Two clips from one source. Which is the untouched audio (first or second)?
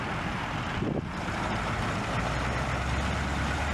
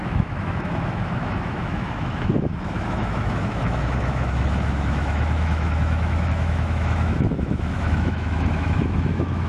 first